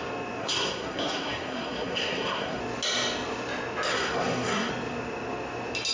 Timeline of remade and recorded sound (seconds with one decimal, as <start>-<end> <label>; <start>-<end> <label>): 0.0-0.4 recorded; 0.4-2.6 remade; 2.6-3.9 recorded; 3.9-4.7 remade; 4.7-5.9 recorded